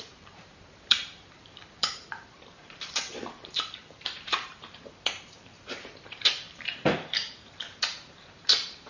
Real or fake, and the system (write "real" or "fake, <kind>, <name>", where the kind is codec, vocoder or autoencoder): fake, vocoder, BigVGAN v2